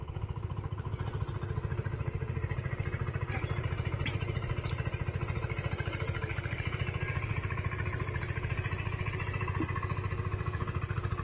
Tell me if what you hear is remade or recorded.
recorded